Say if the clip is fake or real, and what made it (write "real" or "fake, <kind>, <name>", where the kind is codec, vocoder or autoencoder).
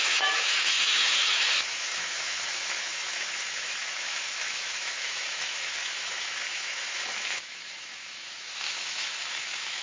fake, autoencoder, DAC-VAE